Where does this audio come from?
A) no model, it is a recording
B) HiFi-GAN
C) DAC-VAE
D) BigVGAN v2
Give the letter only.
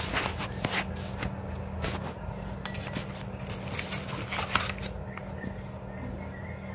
A